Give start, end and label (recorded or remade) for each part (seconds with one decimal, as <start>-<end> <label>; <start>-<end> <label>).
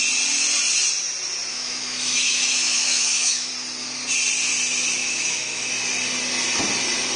0.0-1.5 recorded; 1.5-3.5 remade; 3.5-5.0 recorded; 5.0-5.7 remade; 5.7-7.2 recorded